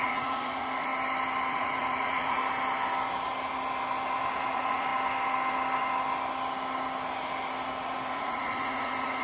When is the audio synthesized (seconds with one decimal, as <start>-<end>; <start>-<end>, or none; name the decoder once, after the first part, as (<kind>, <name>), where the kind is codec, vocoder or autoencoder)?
0.0-0.9 (vocoder, Vocos); 1.5-2.4; 4.3-4.9; 8.1-9.2